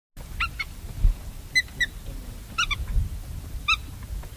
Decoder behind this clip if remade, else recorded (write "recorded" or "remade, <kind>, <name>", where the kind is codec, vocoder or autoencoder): recorded